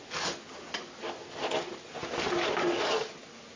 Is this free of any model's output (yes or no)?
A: yes